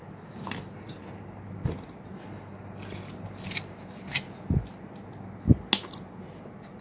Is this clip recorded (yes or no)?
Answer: yes